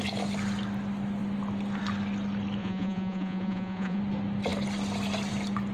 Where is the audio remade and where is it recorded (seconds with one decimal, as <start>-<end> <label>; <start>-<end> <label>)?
0.0-2.6 recorded; 2.6-4.0 remade; 4.0-5.7 recorded